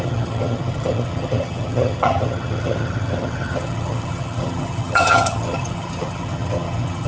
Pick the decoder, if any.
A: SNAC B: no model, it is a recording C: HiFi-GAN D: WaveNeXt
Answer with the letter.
C